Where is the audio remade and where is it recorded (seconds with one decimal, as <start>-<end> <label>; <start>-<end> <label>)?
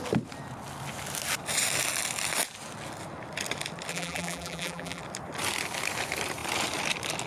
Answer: 0.0-3.9 recorded; 3.9-5.0 remade; 5.0-7.3 recorded